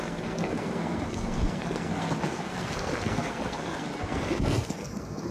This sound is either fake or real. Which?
fake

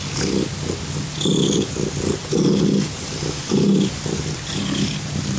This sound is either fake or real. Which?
real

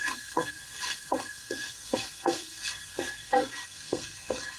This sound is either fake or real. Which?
fake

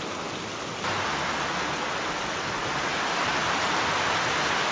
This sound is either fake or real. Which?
real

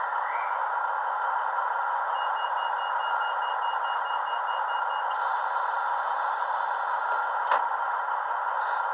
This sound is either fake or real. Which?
real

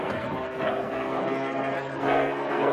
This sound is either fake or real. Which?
fake